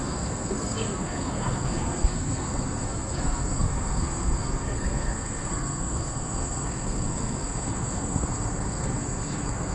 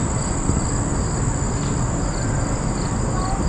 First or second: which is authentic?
second